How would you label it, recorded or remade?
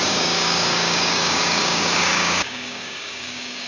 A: remade